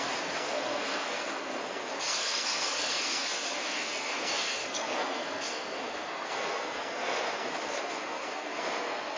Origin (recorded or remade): remade